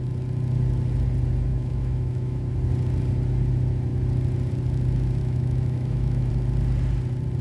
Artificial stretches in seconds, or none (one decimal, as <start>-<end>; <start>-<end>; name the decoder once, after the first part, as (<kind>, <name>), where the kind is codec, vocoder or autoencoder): 1.5-2.5 (autoencoder, DAC-VAE); 5.2-6.3